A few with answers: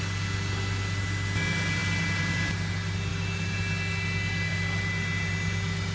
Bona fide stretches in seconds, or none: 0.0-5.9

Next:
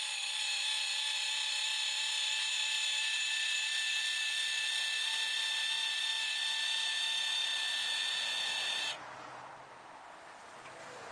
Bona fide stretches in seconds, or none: 0.0-7.8; 9.5-11.1

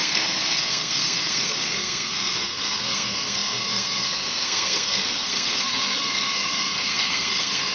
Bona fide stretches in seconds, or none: none

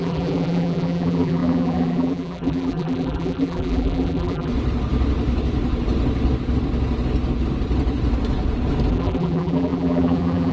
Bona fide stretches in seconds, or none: 4.5-8.9

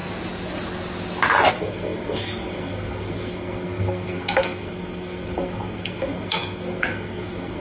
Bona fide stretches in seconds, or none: 0.0-1.5

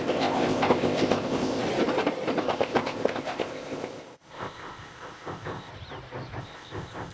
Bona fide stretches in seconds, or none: 1.6-2.4; 5.7-6.4